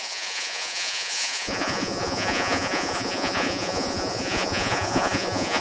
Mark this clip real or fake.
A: fake